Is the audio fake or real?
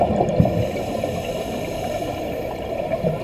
real